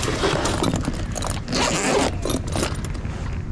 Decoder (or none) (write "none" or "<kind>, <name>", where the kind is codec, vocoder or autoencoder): none